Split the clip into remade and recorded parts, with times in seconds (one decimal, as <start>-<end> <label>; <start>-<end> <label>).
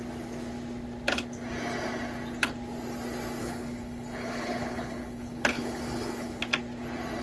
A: 0.0-3.4 recorded; 3.4-6.4 remade; 6.4-7.2 recorded